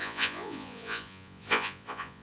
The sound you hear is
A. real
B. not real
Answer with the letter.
B